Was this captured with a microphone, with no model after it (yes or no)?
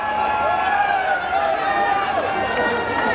yes